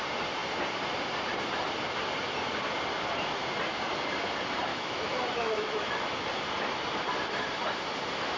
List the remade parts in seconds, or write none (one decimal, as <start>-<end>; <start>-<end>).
4.7-6.3